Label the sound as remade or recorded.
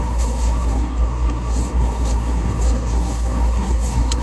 remade